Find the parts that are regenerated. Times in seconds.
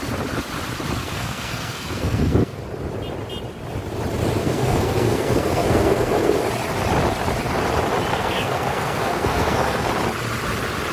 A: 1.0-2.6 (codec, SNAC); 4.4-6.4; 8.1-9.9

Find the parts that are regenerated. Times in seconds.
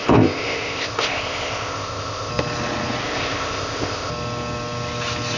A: 0.0-2.3 (codec, ZipCodec); 3.0-4.1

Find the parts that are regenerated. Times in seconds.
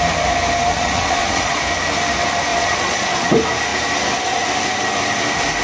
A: 0.7-1.6 (vocoder, Vocos); 2.5-3.3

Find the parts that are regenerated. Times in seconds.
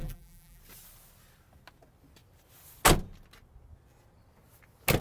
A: 0.0-0.6 (vocoder, BigVGAN v2)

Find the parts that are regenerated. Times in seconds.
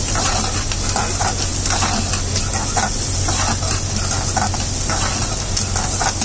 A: none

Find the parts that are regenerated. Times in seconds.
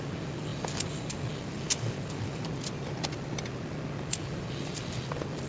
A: 0.5-3.8 (vocoder, BigVGAN v2)